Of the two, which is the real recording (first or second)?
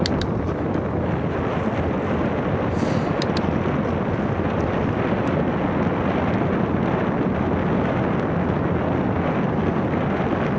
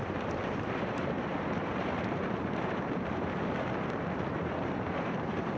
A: first